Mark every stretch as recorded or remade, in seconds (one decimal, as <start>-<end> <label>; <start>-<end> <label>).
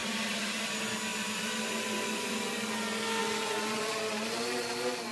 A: 0.0-0.7 remade; 0.7-1.1 recorded; 1.1-2.3 remade; 2.3-5.1 recorded